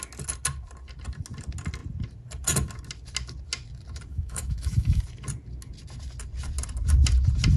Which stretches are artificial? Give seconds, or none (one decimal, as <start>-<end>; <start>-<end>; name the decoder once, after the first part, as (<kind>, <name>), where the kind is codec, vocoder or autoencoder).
4.1-5.0 (autoencoder, DAC-VAE)